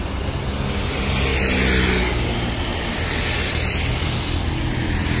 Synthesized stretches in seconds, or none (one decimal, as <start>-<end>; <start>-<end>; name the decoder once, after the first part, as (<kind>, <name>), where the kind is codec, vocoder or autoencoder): none